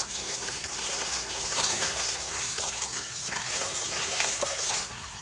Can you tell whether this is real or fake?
fake